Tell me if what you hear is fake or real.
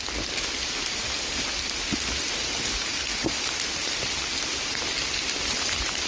real